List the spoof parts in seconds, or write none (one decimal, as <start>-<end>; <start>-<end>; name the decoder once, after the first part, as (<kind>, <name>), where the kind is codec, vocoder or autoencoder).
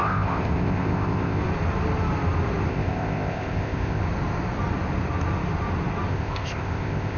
0.0-1.4 (codec, ZipCodec); 2.7-4.0; 6.1-7.2